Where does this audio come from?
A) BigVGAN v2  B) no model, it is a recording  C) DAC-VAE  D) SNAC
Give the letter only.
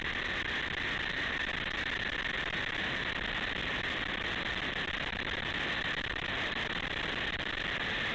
B